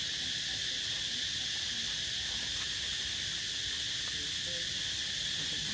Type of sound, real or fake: real